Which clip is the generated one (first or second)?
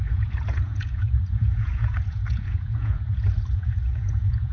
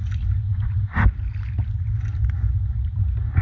first